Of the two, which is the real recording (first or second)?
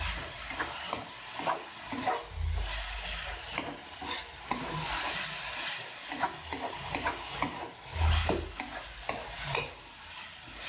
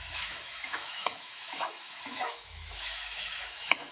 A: first